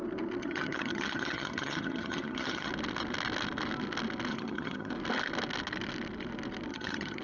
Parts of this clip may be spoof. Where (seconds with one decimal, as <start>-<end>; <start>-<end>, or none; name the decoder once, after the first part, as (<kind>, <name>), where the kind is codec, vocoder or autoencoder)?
0.4-2.7 (vocoder, HiFi-GAN); 4.3-4.9; 6.7-7.2

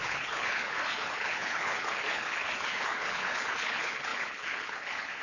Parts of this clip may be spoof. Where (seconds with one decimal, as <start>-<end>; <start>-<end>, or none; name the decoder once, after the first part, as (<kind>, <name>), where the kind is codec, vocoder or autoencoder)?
0.0-5.2 (codec, HILCodec)

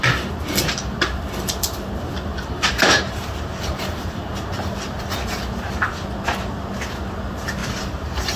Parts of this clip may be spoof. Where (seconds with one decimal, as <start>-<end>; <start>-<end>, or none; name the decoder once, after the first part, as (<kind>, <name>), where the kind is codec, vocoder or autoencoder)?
2.3-5.0 (vocoder, BigVGAN v2); 7.6-8.4

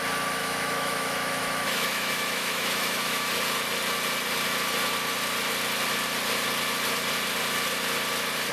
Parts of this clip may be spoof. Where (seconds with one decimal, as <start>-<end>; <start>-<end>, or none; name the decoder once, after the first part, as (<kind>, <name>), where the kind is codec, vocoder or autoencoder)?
0.4-3.3 (autoencoder, DAC-VAE)

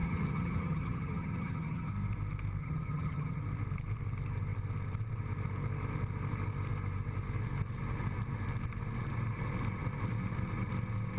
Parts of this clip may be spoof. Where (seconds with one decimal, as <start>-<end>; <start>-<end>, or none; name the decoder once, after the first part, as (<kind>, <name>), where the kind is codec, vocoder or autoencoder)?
0.0-1.9 (vocoder, HiFi-GAN); 2.6-3.4

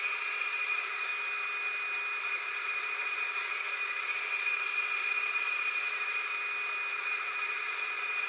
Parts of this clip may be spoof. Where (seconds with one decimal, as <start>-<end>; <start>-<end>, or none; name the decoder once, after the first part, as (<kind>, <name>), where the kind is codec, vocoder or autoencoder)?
0.0-1.1 (vocoder, Vocos); 2.2-6.3; 6.9-8.3

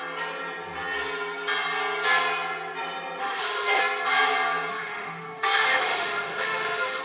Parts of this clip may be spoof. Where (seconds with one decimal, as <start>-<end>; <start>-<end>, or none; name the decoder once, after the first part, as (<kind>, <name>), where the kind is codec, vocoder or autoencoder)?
3.2-3.8 (autoencoder, DAC-VAE); 4.7-7.0

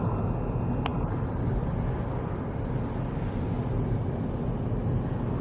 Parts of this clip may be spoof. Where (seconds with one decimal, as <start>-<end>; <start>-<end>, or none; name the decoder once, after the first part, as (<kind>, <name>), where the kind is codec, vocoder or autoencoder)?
none